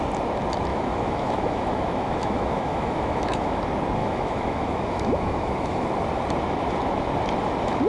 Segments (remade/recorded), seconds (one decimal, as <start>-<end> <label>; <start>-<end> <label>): 0.0-0.7 recorded; 0.7-3.6 remade; 3.6-4.0 recorded; 4.0-5.9 remade; 5.9-7.9 recorded